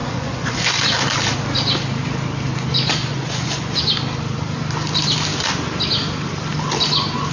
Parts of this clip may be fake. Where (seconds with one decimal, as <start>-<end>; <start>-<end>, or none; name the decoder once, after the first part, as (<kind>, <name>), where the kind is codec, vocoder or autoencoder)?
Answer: 0.0-0.7 (vocoder, Vocos); 3.0-3.8